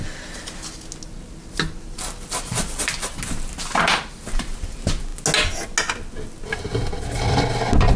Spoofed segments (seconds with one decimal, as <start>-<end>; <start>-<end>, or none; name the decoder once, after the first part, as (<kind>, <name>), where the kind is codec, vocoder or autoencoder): none